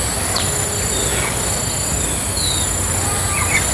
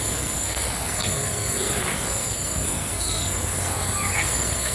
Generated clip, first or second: second